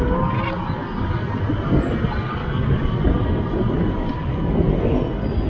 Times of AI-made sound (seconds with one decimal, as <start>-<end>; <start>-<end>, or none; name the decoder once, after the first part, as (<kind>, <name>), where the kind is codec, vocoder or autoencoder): none

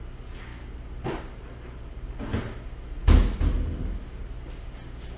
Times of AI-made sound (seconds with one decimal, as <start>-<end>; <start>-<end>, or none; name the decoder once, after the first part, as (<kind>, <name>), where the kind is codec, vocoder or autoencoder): none

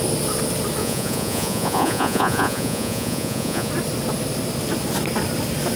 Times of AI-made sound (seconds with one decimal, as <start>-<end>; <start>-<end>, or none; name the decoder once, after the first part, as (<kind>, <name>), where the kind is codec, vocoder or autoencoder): 0.8-3.7 (vocoder, Vocos)

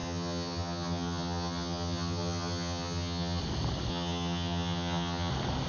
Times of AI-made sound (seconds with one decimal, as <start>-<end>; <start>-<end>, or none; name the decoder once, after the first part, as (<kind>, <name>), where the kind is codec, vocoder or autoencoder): 0.0-3.4 (vocoder, HiFi-GAN); 3.9-5.3

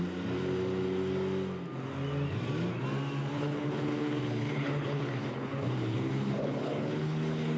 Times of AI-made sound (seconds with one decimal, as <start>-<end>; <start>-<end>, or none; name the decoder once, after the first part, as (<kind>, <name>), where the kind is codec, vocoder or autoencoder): 3.3-7.6 (codec, HILCodec)

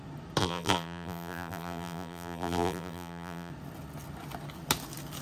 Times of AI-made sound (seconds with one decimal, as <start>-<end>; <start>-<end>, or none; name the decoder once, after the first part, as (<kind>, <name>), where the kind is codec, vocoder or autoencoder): 0.4-3.5 (vocoder, BigVGAN v2)

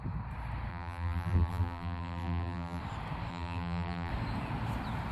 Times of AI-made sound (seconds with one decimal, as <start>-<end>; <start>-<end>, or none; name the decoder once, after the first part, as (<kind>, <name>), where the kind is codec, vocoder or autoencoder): 0.7-2.8 (vocoder, BigVGAN v2); 3.3-4.1

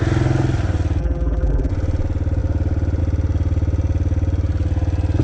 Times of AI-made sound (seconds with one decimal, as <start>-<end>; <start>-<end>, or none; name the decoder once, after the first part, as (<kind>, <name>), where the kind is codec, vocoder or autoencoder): 1.0-1.7 (vocoder, BigVGAN v2)